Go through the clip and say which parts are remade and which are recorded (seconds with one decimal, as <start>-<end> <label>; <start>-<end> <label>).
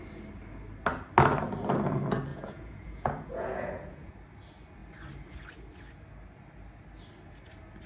0.0-2.3 recorded; 2.3-4.1 remade; 4.1-7.9 recorded